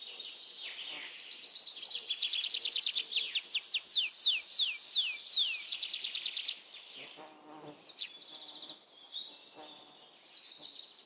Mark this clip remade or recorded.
recorded